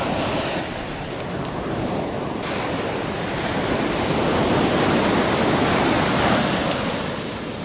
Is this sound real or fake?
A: real